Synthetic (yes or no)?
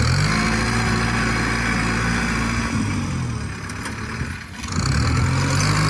no